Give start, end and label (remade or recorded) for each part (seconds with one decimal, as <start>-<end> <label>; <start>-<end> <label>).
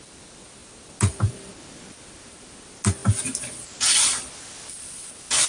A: 0.0-5.5 recorded